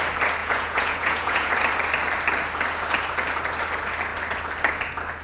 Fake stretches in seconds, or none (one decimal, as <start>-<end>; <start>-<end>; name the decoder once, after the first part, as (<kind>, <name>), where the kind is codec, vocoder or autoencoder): 0.4-1.5 (vocoder, Vocos)